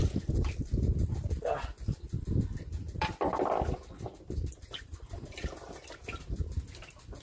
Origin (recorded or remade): recorded